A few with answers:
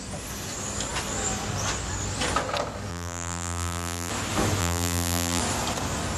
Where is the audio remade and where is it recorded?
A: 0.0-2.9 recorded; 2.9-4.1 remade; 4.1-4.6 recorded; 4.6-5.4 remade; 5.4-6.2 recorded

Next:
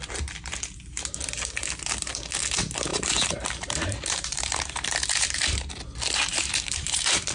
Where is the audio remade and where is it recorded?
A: 0.0-2.9 recorded; 2.9-5.7 remade; 5.7-6.3 recorded; 6.3-7.3 remade

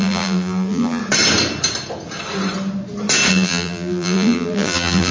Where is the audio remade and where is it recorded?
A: 0.0-1.0 remade; 1.0-3.3 recorded; 3.3-5.1 remade

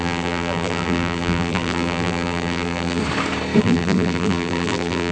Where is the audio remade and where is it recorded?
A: 0.0-3.0 remade; 3.0-3.6 recorded; 3.6-5.1 remade

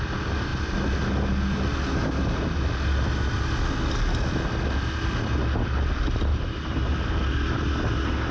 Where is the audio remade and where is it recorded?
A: 0.0-6.3 recorded; 6.3-7.2 remade; 7.2-8.3 recorded